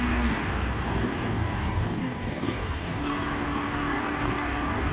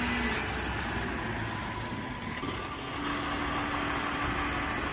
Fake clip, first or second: first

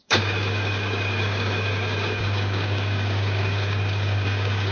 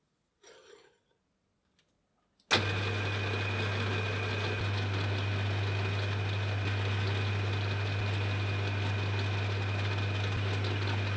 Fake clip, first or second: first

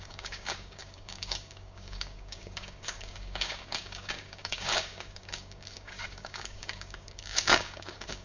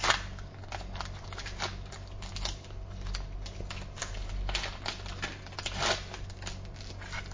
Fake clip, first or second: first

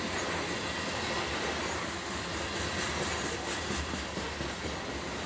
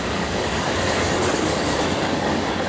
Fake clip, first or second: second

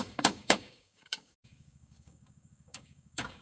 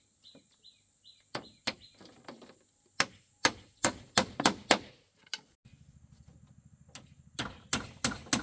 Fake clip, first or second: first